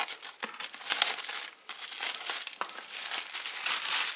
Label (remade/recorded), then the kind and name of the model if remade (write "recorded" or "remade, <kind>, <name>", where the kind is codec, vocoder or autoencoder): recorded